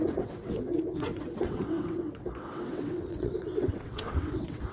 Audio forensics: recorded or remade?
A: remade